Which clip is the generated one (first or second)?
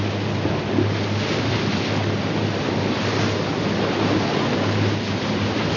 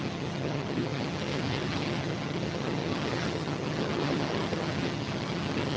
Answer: second